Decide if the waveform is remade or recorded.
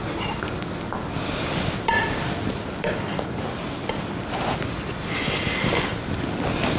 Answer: recorded